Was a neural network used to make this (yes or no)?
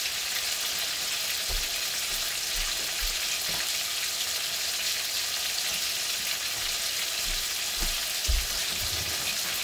no